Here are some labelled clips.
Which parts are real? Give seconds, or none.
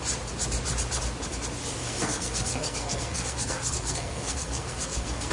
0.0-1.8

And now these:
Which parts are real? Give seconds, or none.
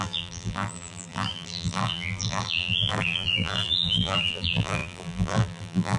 none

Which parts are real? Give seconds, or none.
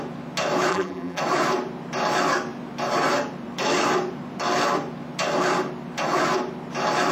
0.0-0.7; 1.2-7.1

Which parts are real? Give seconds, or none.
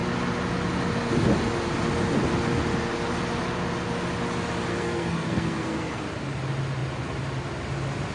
0.0-4.7; 6.0-8.1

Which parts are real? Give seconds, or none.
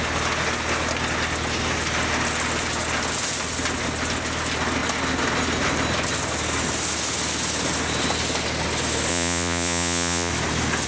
0.0-9.1; 10.3-10.9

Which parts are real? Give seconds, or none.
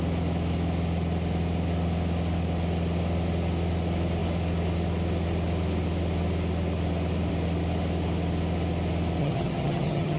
0.0-9.2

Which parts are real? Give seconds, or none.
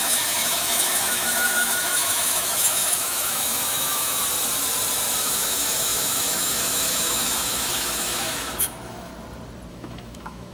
4.2-5.2; 9.1-9.7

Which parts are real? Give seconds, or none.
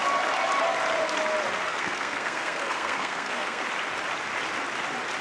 0.0-1.7; 3.6-5.2